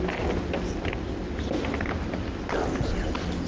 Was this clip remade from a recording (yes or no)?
no